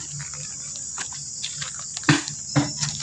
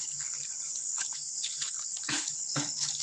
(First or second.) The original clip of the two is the first